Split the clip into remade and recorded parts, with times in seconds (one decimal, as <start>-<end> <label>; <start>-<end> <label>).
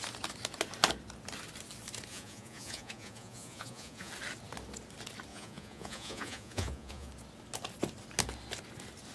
0.0-2.1 recorded; 2.1-4.1 remade; 4.1-5.3 recorded; 5.3-7.1 remade; 7.1-9.1 recorded